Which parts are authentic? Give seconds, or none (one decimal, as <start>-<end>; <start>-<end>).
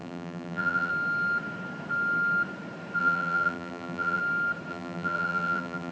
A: 0.9-3.0; 4.2-4.7